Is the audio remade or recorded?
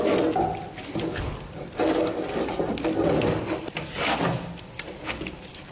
recorded